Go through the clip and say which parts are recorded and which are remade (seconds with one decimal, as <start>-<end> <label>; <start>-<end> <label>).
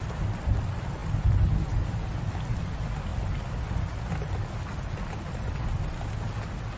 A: 0.0-6.8 recorded